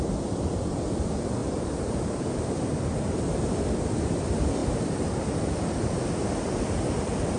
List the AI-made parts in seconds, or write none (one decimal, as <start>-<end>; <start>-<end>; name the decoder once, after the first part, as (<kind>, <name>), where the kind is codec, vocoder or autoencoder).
1.4-2.6 (vocoder, BigVGAN v2); 4.6-5.6